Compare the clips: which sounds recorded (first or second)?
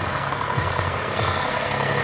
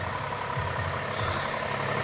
second